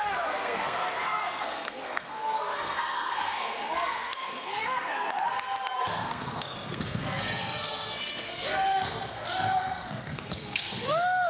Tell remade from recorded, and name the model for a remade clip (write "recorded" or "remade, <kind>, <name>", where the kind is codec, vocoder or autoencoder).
remade, codec, SNAC